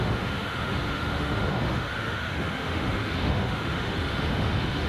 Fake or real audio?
fake